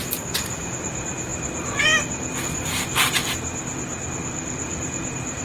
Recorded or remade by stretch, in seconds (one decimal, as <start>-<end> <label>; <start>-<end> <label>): 0.0-4.6 recorded; 4.6-5.4 remade